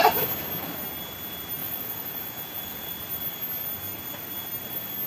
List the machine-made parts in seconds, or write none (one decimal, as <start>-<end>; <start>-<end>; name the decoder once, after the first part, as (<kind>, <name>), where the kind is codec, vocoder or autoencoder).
1.6-2.9 (vocoder, Vocos)